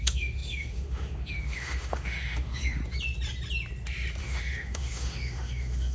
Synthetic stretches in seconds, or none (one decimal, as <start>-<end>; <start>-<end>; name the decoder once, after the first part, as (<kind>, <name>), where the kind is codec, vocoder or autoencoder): 0.0-2.8 (autoencoder, DAC-VAE); 4.2-5.9

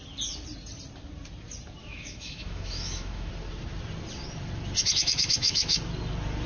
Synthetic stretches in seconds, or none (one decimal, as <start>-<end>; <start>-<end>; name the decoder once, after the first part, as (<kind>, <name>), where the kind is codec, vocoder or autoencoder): 1.8-3.3 (autoencoder, DAC-VAE); 4.8-5.8

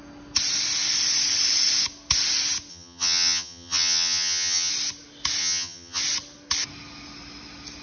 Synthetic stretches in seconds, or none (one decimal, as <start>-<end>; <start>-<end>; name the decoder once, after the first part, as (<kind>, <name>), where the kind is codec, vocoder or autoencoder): 2.7-4.7 (vocoder, HiFi-GAN); 5.4-6.0

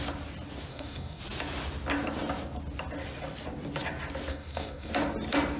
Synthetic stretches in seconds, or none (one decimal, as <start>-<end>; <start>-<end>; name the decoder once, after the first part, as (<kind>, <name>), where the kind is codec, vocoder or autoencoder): 0.7-1.2 (codec, DAC); 4.3-4.9

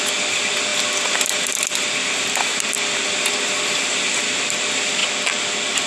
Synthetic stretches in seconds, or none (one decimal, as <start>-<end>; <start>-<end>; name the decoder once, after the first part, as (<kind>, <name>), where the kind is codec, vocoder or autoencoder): none

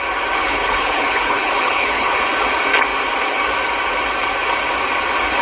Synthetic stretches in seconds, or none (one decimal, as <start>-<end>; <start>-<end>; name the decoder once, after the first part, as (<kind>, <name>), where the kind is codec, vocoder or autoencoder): 0.4-2.2 (codec, HILCodec)

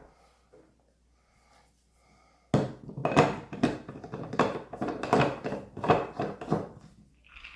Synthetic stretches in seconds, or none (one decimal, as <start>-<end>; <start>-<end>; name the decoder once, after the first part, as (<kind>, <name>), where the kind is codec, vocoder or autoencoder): none